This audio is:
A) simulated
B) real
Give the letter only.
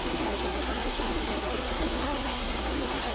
A